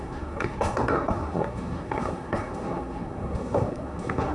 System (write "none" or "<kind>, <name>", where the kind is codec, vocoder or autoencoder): codec, SNAC